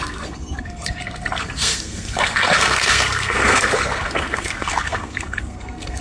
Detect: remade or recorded remade